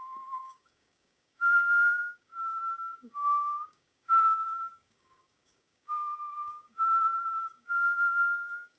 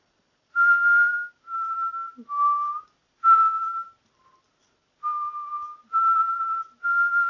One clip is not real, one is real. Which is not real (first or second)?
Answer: first